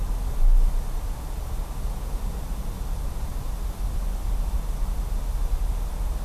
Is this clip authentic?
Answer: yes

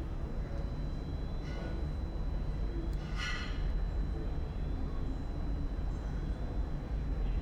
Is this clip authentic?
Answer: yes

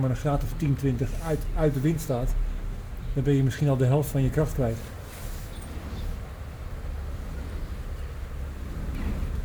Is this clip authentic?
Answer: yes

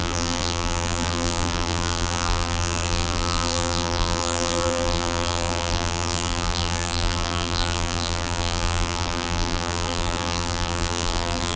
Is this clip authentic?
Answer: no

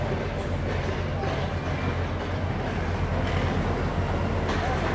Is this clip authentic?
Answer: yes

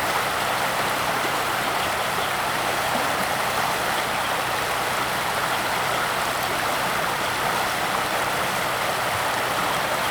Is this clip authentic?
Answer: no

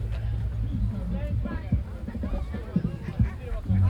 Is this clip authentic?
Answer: yes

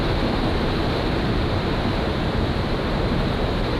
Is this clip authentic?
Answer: no